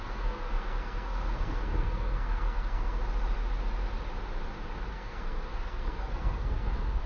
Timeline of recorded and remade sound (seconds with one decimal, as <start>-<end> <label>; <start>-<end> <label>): 0.0-3.0 remade; 3.0-4.9 recorded; 4.9-7.1 remade